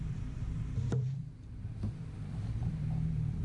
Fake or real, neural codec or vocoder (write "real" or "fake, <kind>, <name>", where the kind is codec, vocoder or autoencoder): fake, vocoder, BigVGAN v2